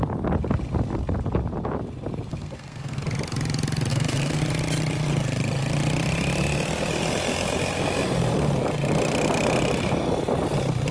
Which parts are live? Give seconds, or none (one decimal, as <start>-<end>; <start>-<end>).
0.0-2.3; 3.0-3.9; 4.4-10.9